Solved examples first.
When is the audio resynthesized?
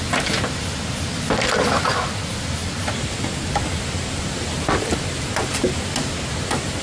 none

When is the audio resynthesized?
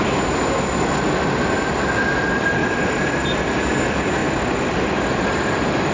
2.6-3.6 (vocoder, BigVGAN v2)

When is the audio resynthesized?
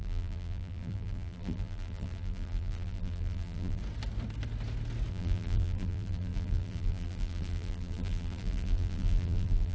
0.0-3.8 (vocoder, BigVGAN v2); 5.1-9.7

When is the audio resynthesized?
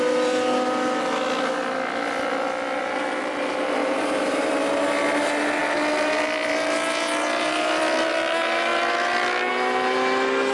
3.8-4.5 (vocoder, BigVGAN v2)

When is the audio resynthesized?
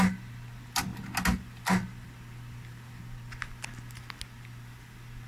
none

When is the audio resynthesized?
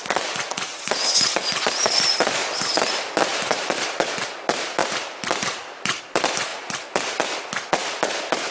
2.4-4.1 (vocoder, BigVGAN v2); 4.8-6.0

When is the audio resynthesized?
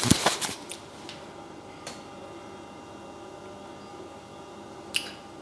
0.0-0.7 (vocoder, BigVGAN v2); 3.9-5.4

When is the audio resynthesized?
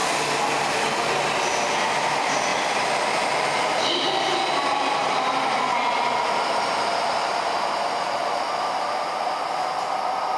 8.2-9.0 (vocoder, BigVGAN v2)